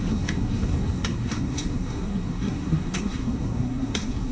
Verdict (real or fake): fake